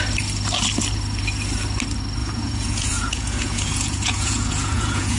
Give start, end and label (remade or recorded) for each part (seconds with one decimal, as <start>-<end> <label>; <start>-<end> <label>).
0.0-2.2 recorded; 2.2-5.2 remade